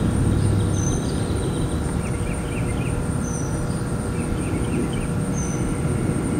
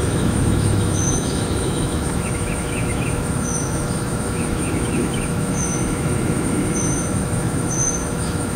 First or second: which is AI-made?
second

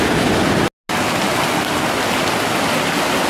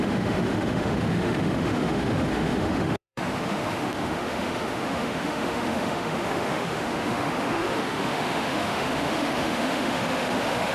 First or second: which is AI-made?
second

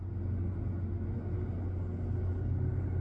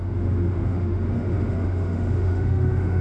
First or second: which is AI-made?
second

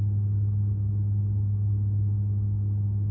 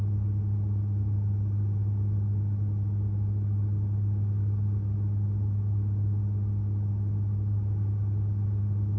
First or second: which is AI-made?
first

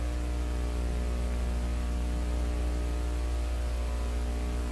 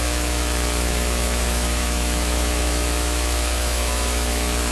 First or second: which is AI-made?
second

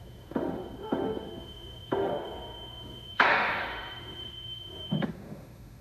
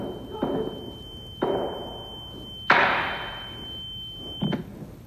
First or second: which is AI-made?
first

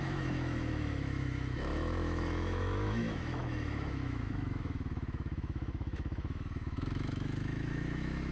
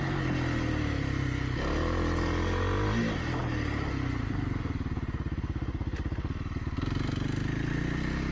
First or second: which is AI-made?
first